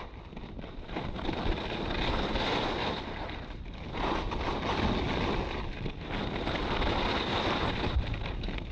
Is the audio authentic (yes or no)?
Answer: yes